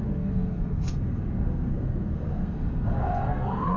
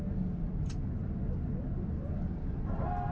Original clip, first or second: second